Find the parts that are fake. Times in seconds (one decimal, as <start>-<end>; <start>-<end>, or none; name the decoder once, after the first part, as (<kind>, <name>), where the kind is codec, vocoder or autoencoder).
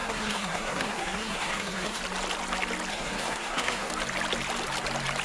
0.0-2.0 (codec, SNAC); 2.9-3.9